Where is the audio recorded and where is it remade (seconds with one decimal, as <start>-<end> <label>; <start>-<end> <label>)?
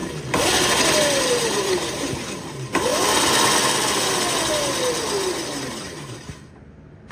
0.0-1.2 recorded; 1.2-2.9 remade; 2.9-5.7 recorded; 5.7-7.1 remade